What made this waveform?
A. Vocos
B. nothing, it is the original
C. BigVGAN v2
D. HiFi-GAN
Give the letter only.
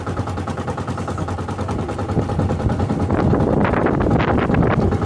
B